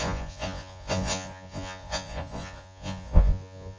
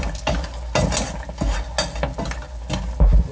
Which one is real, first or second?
second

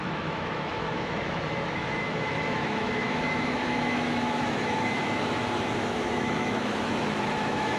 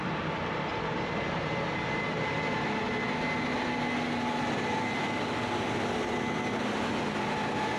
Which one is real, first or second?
second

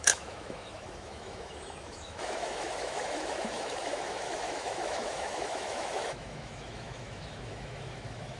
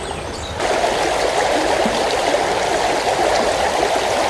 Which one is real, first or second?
second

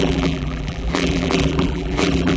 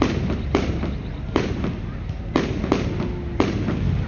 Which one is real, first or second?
second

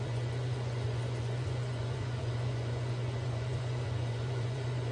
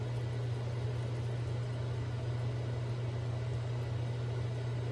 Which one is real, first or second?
second